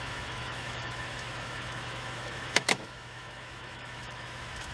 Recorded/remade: remade